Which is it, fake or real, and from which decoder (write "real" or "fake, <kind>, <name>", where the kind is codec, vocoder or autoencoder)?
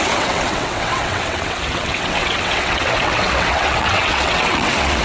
fake, vocoder, WaveNeXt